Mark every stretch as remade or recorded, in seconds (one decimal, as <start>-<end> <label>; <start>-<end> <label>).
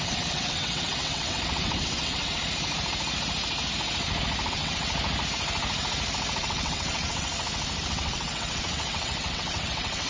0.0-2.4 remade; 2.4-4.5 recorded; 4.5-4.9 remade; 4.9-6.4 recorded; 6.4-7.3 remade; 7.3-7.8 recorded; 7.8-10.1 remade